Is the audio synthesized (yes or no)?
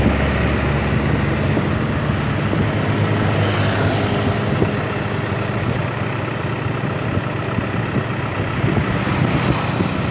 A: no